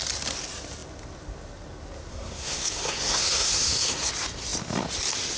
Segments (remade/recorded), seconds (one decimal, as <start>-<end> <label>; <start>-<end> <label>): 0.0-2.1 recorded; 2.1-4.1 remade; 4.1-5.4 recorded